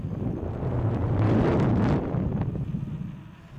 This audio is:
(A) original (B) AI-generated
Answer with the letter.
B